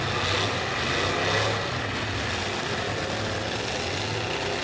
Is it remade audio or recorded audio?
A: recorded